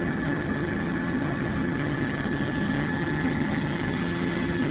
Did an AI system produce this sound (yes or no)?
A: yes